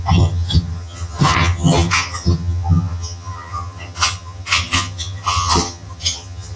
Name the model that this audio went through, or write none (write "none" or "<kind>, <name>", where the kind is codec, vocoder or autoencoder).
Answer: vocoder, HiFi-GAN